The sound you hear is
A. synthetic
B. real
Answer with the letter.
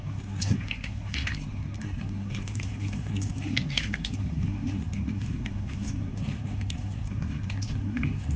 A